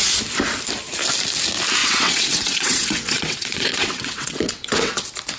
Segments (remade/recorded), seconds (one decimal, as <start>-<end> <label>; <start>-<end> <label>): 0.0-1.8 recorded; 1.8-5.0 remade; 5.0-5.4 recorded

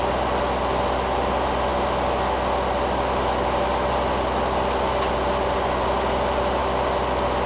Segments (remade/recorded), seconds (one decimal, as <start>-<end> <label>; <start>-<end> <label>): 0.0-7.5 recorded